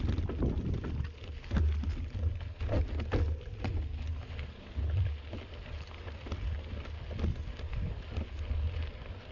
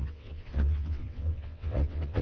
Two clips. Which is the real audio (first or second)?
first